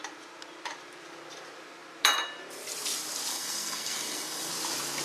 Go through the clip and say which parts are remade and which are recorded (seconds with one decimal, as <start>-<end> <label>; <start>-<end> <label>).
0.0-3.3 recorded; 3.3-4.5 remade; 4.5-5.0 recorded